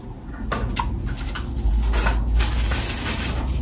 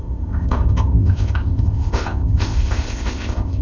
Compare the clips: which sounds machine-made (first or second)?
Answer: second